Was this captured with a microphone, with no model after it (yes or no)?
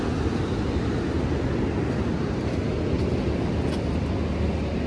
yes